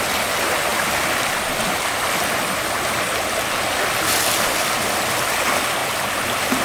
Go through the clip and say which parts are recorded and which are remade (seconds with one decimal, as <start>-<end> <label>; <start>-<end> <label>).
0.0-0.7 recorded; 0.7-3.0 remade; 3.0-6.6 recorded